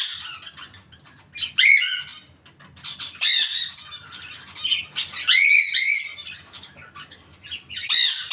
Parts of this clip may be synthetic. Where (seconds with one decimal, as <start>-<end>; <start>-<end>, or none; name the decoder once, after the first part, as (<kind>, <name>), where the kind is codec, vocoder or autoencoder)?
none